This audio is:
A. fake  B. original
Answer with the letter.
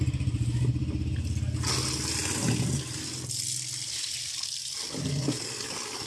B